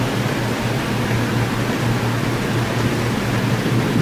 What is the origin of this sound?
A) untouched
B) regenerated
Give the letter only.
A